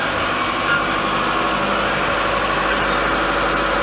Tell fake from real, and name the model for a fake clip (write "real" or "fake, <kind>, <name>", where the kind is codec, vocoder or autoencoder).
real